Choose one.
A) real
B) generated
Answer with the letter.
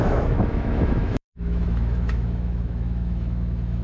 B